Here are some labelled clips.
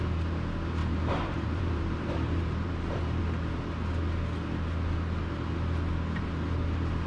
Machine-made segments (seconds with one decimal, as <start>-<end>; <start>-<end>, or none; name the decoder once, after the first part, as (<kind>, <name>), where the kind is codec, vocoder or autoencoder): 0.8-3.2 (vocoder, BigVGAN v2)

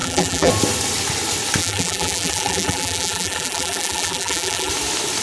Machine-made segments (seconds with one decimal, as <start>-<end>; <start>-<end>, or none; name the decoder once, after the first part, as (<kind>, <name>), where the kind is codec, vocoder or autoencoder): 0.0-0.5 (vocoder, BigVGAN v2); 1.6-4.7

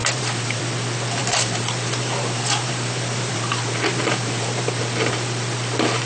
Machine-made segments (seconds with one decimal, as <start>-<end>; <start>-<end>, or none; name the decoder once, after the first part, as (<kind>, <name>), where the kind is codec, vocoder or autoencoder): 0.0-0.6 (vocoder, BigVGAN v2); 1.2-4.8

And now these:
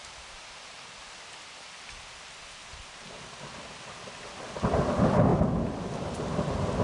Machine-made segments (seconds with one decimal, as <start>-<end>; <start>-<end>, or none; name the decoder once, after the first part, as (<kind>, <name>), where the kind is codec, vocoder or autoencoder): 0.0-1.0 (vocoder, BigVGAN v2); 2.6-3.3